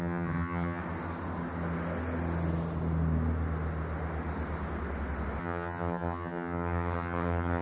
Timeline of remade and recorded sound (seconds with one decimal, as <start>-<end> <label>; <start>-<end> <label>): 0.0-0.8 remade; 0.8-5.4 recorded; 5.4-7.6 remade